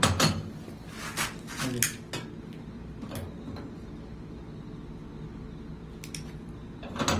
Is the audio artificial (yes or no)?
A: no